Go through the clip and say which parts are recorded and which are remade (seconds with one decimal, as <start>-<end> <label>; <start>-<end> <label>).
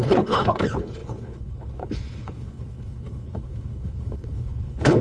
0.0-5.0 remade